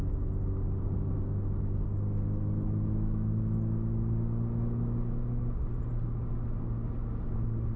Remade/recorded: recorded